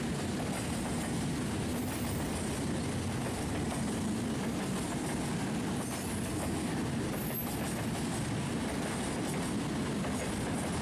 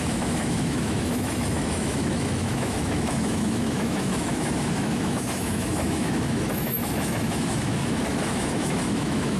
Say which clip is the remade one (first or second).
second